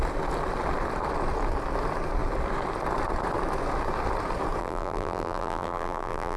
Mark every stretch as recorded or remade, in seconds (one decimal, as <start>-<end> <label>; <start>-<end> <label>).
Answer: 0.0-4.6 recorded; 4.6-6.4 remade

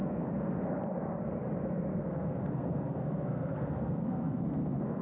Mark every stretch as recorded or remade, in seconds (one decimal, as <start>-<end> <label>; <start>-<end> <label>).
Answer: 0.0-0.6 remade; 0.6-1.9 recorded; 1.9-5.0 remade

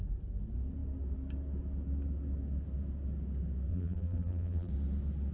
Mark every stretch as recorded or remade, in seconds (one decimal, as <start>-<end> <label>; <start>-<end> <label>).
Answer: 0.0-3.7 recorded; 3.7-4.7 remade; 4.7-5.3 recorded

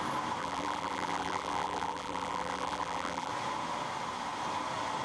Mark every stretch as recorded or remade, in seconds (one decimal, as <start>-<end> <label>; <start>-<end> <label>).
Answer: 0.0-0.4 recorded; 0.4-3.3 remade; 3.3-5.0 recorded